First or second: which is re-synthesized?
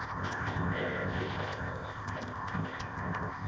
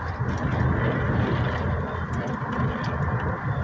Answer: first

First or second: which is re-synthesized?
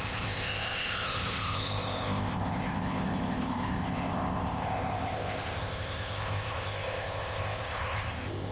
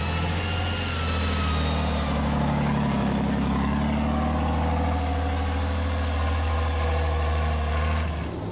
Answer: first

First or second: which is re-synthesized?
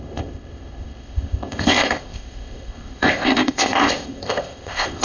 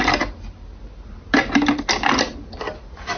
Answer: first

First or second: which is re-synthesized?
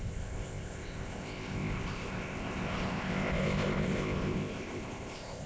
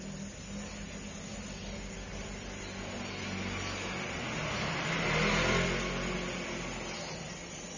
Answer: first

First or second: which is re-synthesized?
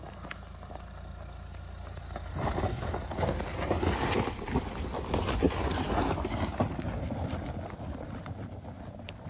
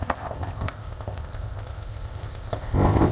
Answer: second